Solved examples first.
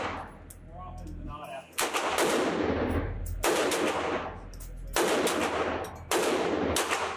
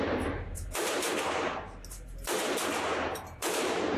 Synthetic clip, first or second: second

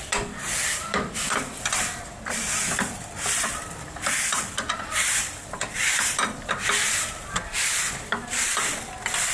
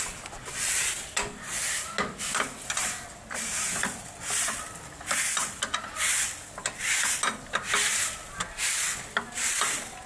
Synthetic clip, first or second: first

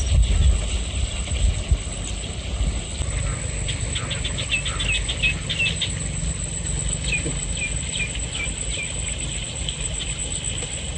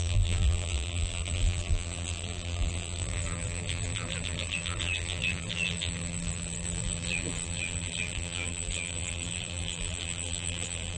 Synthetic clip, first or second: second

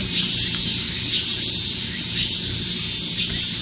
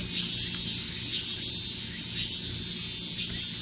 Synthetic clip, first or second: first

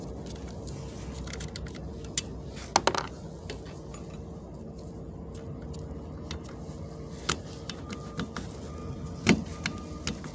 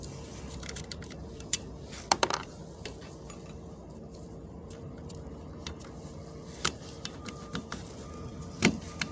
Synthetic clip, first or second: second